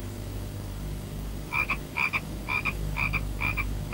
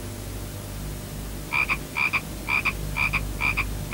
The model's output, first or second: first